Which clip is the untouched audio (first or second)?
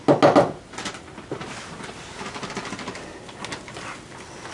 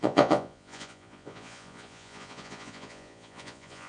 first